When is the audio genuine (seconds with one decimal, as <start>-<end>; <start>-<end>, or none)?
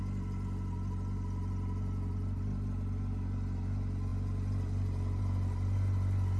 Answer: 0.0-6.4